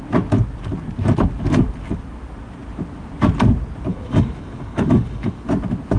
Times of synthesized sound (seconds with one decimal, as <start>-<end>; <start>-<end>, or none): 3.9-5.4